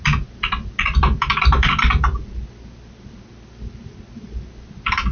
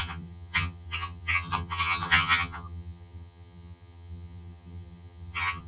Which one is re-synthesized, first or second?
second